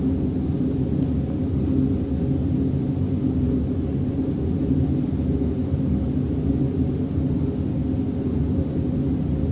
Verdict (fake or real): real